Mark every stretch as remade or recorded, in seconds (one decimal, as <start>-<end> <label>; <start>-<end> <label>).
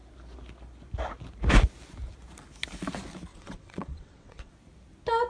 0.0-3.3 recorded; 3.3-4.5 remade; 4.5-5.3 recorded